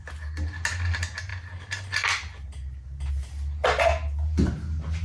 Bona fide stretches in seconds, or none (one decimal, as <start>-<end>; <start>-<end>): 0.0-5.0